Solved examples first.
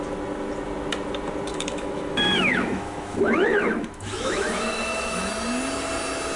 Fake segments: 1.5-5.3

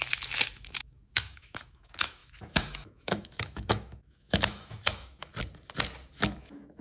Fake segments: 0.0-5.3; 6.1-6.8